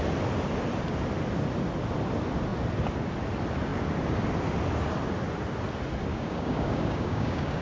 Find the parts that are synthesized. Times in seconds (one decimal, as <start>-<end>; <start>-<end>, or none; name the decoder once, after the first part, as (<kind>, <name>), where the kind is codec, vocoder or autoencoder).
6.1-7.6 (codec, DAC)